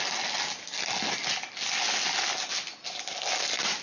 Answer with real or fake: real